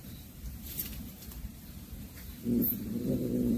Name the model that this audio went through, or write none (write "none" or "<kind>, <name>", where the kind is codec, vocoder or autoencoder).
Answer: vocoder, BigVGAN v2